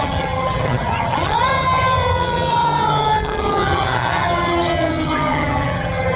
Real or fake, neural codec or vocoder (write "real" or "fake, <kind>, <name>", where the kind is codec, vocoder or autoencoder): fake, vocoder, HiFi-GAN